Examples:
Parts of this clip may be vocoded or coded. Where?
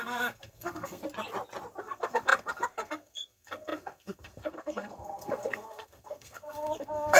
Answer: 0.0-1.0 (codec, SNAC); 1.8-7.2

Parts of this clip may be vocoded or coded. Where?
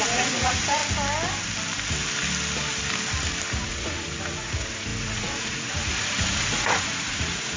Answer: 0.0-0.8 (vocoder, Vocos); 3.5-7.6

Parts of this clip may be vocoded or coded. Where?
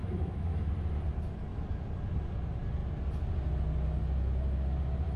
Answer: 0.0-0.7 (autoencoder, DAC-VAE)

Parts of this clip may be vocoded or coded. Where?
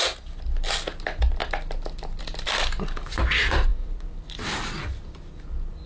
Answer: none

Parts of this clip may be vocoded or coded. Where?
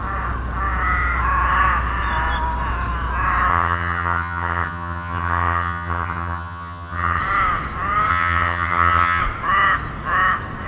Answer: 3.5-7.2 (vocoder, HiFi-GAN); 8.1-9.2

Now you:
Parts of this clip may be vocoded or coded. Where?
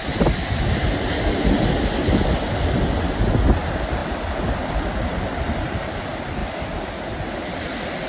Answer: 3.6-4.0 (vocoder, BigVGAN v2); 4.7-6.4; 7.3-8.1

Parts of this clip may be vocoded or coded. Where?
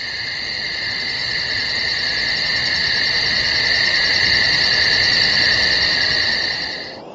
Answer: none